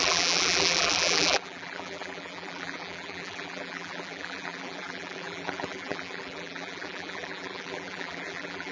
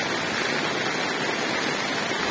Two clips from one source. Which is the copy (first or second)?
first